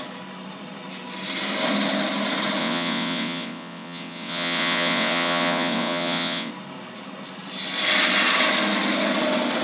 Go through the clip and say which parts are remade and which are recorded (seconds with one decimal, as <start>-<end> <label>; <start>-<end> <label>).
0.0-2.6 recorded; 2.6-6.5 remade; 6.5-9.6 recorded